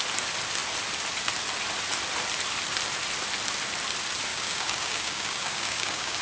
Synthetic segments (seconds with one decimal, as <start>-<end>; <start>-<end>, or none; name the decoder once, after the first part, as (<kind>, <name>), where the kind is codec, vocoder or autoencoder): 4.3-6.2 (codec, DAC)